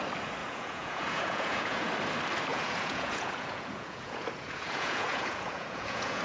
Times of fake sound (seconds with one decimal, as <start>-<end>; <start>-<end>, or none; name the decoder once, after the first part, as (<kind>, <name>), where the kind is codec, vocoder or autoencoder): 0.4-1.9 (vocoder, Vocos); 2.5-6.2